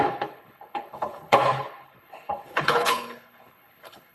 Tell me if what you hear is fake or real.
fake